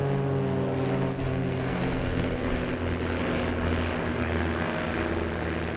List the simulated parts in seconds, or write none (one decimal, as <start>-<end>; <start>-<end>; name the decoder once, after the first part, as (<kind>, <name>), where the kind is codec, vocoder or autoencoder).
1.2-2.5 (codec, SNAC); 4.1-4.9